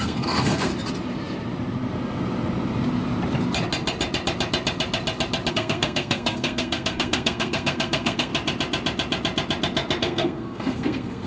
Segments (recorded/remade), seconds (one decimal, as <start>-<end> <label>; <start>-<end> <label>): 0.0-0.7 remade; 0.7-5.5 recorded; 5.5-8.3 remade; 8.3-10.0 recorded; 10.0-11.3 remade